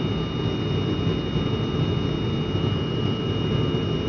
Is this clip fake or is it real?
real